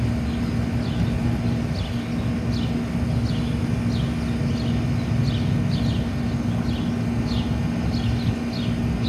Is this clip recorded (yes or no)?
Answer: yes